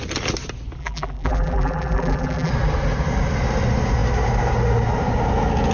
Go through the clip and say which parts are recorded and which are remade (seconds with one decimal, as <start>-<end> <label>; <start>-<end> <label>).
0.0-0.8 recorded; 0.8-2.5 remade; 2.5-5.7 recorded